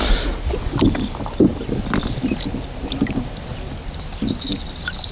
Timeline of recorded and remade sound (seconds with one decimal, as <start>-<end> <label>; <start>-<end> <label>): 0.0-5.1 recorded

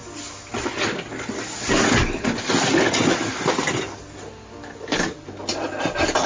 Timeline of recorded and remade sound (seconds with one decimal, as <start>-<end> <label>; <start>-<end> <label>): 0.0-6.3 recorded

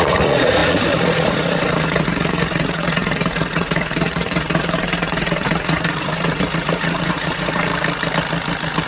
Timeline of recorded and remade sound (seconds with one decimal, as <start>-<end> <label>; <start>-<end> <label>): 0.0-7.7 remade; 7.7-8.9 recorded

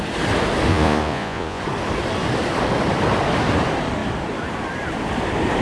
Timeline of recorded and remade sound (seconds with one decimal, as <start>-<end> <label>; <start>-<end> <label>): 0.0-0.7 recorded; 0.7-1.6 remade; 1.6-5.6 recorded

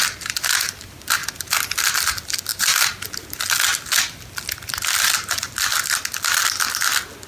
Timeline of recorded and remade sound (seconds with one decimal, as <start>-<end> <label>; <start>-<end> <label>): 0.0-2.5 recorded; 2.5-3.4 remade; 3.4-7.3 recorded